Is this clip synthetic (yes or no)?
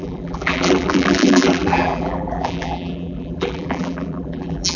yes